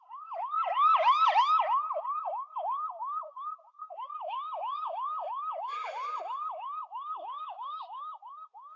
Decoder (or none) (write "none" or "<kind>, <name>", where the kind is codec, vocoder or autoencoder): vocoder, BigVGAN v2